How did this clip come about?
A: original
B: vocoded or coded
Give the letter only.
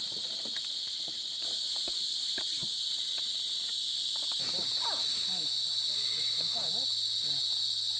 A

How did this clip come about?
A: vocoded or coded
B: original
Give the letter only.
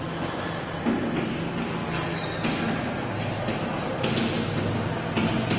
B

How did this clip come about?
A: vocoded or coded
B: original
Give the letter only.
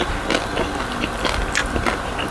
B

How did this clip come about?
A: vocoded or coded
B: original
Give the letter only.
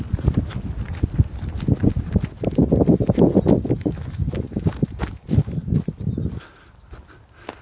B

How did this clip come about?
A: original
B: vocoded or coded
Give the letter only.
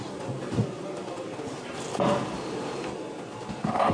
A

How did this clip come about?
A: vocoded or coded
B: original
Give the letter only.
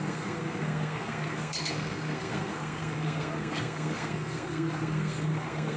A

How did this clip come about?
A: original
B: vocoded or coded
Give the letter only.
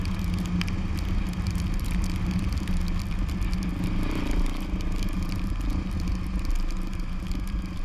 A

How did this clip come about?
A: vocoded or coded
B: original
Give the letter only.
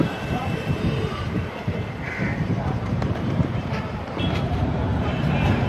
A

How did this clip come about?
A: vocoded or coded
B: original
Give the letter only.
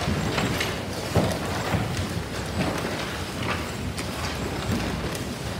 B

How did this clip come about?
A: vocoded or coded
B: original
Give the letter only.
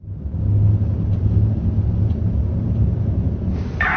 B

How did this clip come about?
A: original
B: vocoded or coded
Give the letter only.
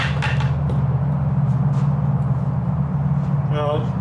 A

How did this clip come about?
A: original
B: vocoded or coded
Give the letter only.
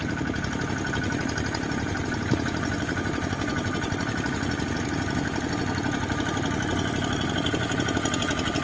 A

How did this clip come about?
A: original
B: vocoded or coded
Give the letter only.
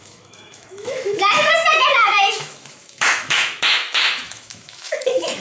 B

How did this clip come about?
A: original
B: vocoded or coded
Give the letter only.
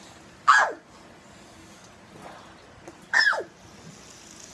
A